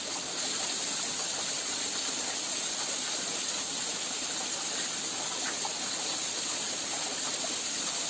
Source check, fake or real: fake